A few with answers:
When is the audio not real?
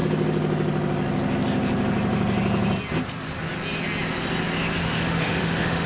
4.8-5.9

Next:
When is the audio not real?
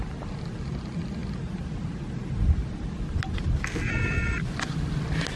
none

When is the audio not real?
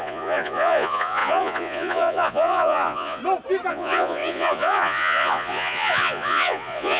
0.0-3.2; 3.7-7.0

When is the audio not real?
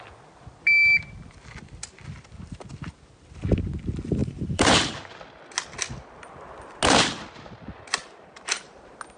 4.2-5.1; 8.0-8.6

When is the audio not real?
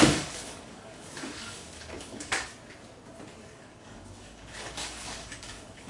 0.0-2.5; 3.4-5.9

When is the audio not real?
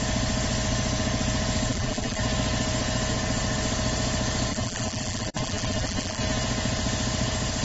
1.7-2.2; 4.5-6.2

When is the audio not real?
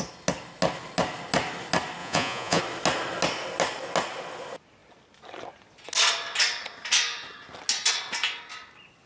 2.0-2.6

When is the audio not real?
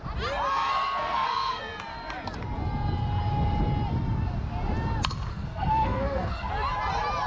0.5-1.6; 5.3-6.5